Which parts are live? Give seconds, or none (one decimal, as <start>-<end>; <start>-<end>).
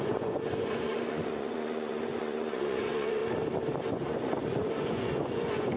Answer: 3.2-3.9